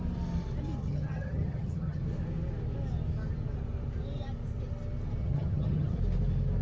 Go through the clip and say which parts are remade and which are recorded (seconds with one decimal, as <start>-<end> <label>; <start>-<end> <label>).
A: 0.0-0.8 recorded; 0.8-2.0 remade; 2.0-5.2 recorded; 5.2-6.0 remade; 6.0-6.6 recorded